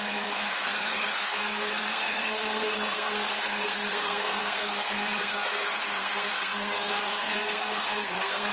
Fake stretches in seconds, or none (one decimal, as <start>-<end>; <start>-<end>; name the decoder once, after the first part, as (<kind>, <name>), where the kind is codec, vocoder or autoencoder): 0.0-8.5 (codec, SNAC)